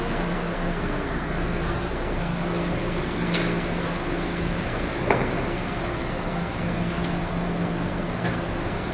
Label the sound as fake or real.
fake